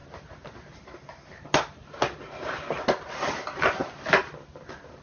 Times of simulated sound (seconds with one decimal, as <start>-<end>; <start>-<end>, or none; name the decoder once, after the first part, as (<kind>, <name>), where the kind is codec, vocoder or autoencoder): none